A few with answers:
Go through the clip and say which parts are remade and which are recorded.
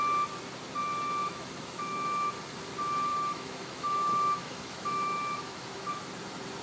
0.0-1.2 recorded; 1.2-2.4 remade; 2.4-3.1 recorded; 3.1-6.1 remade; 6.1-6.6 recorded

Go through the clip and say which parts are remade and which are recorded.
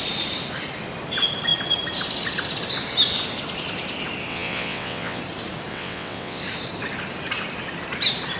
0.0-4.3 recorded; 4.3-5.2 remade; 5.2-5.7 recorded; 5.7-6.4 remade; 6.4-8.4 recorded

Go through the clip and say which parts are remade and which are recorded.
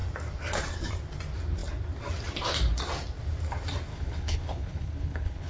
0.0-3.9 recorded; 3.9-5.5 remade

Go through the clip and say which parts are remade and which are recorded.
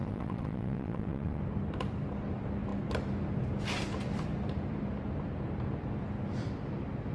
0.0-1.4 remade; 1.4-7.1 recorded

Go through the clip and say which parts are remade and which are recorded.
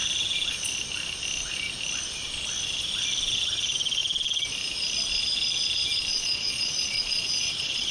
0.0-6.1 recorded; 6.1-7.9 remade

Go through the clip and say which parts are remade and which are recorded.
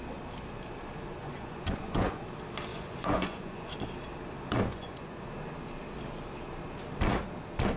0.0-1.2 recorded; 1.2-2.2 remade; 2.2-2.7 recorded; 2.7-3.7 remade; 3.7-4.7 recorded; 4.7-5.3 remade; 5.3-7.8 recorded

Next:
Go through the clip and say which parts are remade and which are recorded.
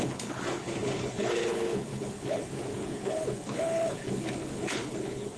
0.0-5.4 remade